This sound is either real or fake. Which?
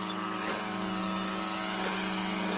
real